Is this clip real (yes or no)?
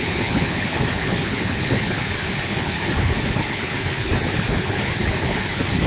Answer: no